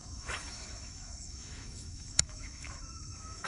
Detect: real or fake fake